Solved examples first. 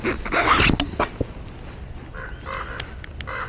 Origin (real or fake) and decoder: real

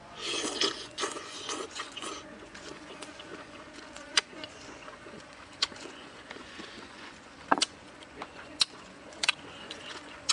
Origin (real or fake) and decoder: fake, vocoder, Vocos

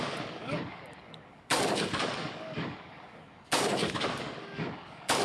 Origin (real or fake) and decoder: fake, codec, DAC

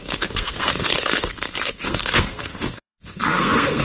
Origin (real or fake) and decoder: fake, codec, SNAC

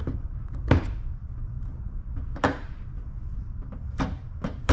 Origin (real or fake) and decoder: fake, vocoder, BigVGAN v2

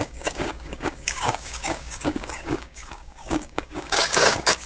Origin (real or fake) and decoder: fake, codec, DAC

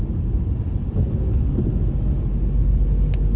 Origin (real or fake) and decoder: real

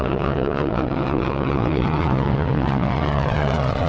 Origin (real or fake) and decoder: fake, vocoder, WaveNeXt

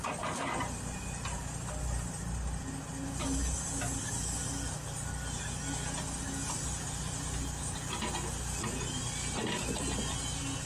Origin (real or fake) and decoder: real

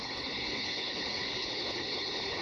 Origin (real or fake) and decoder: fake, codec, HILCodec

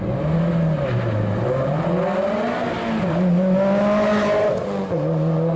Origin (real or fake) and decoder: real